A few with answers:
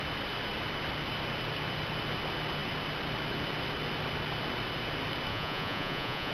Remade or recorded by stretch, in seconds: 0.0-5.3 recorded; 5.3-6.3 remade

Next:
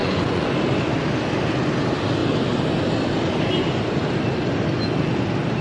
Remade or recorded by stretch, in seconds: 0.0-0.5 remade; 0.5-5.6 recorded

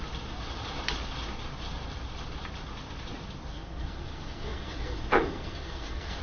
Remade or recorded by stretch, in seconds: 0.0-3.5 recorded; 3.5-6.2 remade

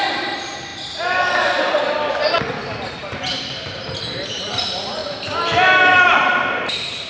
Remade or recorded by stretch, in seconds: 0.0-0.7 remade; 0.7-2.1 recorded; 2.1-5.0 remade; 5.0-5.9 recorded; 5.9-7.1 remade

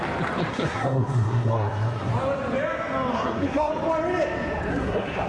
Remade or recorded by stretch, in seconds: 0.0-0.5 recorded; 0.5-2.1 remade; 2.1-3.1 recorded; 3.1-3.7 remade; 3.7-4.7 recorded; 4.7-5.3 remade